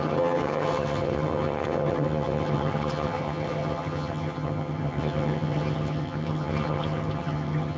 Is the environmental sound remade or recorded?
remade